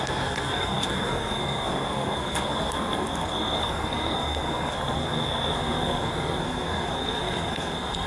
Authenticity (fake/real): fake